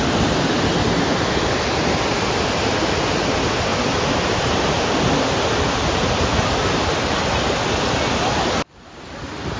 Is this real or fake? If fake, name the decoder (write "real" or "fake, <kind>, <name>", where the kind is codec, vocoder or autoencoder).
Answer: real